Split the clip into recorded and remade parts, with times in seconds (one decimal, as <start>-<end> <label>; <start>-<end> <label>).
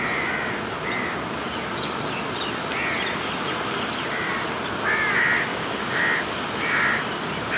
0.0-5.5 recorded; 5.5-6.0 remade; 6.0-7.6 recorded